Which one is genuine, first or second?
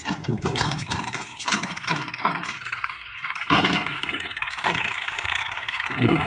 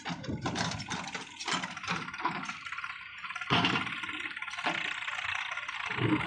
second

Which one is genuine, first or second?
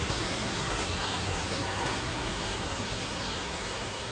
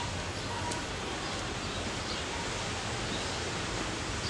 second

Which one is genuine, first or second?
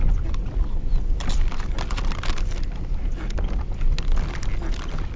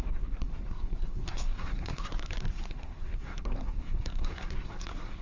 first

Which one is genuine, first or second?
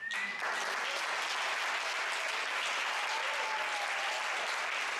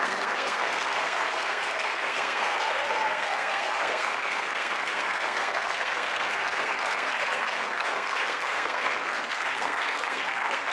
first